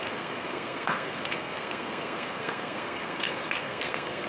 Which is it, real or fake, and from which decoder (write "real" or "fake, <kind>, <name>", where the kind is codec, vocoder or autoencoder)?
fake, codec, SNAC